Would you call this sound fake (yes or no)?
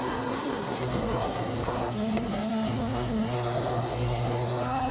yes